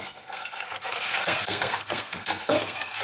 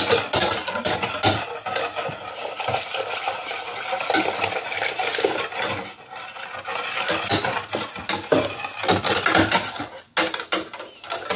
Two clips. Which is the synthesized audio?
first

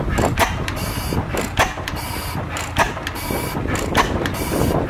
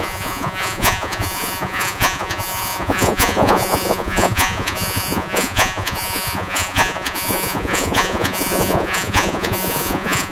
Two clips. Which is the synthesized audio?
second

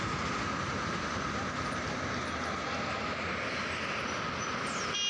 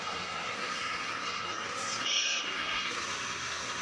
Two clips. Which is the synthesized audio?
second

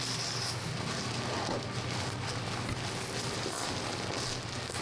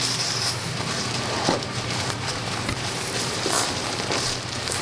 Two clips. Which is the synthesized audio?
second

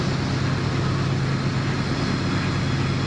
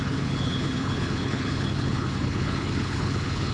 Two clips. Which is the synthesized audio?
second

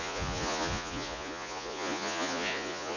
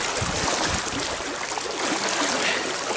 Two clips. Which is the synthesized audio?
first